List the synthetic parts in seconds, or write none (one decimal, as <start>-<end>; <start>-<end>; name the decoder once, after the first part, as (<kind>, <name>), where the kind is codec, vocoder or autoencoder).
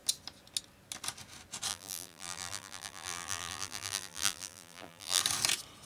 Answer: 1.7-5.2 (vocoder, BigVGAN v2)